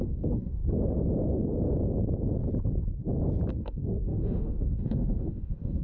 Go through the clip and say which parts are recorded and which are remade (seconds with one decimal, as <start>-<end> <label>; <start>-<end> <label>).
0.0-0.6 remade; 0.6-3.5 recorded; 3.5-5.8 remade